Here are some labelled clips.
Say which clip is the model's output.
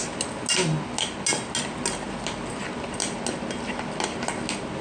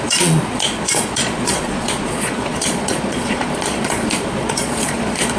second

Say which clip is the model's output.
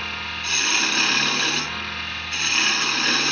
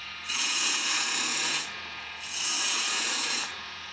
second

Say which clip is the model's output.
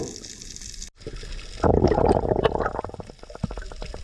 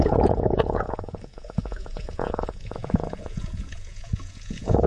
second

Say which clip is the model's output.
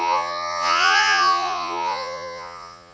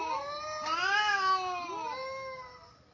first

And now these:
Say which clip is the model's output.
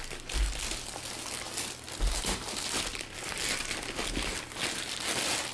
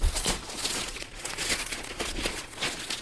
second